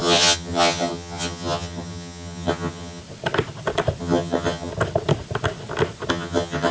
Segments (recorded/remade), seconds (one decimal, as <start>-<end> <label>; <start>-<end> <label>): 0.0-3.0 remade; 3.0-4.0 recorded; 4.0-4.7 remade; 4.7-6.1 recorded; 6.1-6.7 remade